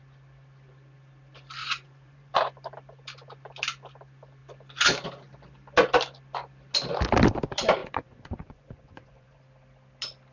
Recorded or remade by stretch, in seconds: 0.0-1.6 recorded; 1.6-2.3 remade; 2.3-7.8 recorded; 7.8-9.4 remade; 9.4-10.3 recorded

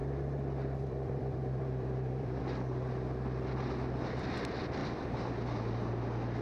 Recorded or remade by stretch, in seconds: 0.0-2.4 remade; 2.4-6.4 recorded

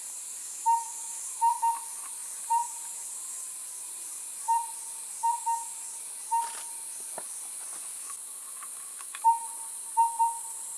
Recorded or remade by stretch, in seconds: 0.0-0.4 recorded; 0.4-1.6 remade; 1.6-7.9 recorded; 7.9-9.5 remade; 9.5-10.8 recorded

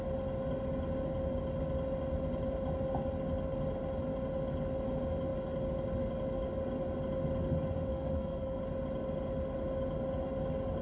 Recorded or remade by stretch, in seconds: 0.0-7.9 recorded; 7.9-8.6 remade; 8.6-10.8 recorded

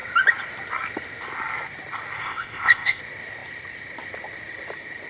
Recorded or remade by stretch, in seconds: 0.0-2.2 recorded; 2.2-3.0 remade; 3.0-5.1 recorded